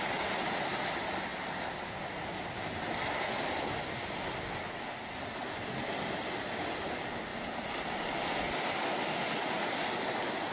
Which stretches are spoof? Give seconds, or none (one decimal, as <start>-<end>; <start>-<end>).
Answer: none